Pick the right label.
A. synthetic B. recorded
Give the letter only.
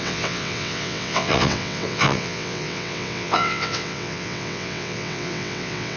A